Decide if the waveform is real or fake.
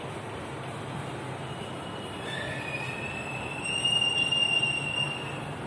real